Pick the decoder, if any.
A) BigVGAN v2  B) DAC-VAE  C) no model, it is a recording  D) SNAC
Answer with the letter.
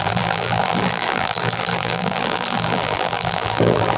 A